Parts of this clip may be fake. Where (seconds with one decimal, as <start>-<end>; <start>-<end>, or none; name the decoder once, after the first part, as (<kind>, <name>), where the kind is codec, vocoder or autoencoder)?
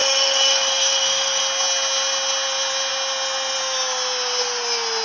0.0-1.4 (autoencoder, DAC-VAE)